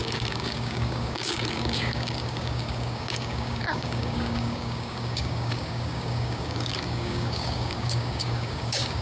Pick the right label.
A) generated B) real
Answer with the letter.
A